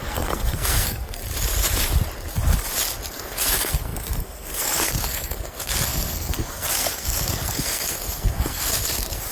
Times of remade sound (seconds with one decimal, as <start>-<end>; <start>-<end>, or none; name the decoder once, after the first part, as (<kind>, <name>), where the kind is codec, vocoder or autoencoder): 0.0-1.2 (codec, SNAC); 3.1-9.3

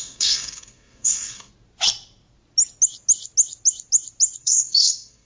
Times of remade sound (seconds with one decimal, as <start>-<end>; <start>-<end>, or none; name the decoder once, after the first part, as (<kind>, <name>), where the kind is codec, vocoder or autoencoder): 0.0-1.5 (codec, SNAC); 4.4-5.3

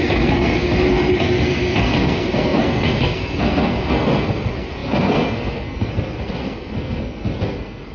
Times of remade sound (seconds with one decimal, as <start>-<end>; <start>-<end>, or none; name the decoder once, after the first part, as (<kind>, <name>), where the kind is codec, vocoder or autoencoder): 0.0-7.9 (codec, SNAC)

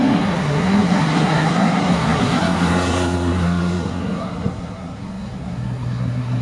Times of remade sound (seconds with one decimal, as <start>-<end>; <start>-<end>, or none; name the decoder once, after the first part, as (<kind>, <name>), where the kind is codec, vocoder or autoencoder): 0.0-6.4 (codec, SNAC)